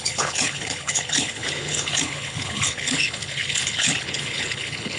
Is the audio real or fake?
fake